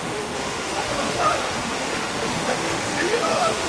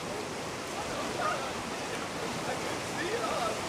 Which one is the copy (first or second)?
first